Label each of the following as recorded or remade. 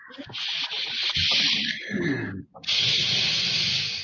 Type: recorded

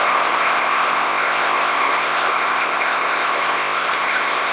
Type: remade